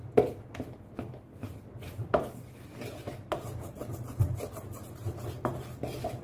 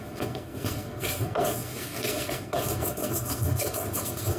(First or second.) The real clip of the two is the first